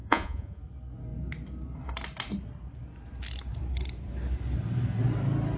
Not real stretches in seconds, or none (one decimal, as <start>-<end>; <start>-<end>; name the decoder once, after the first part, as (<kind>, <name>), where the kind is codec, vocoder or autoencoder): 0.0-0.6 (vocoder, Vocos)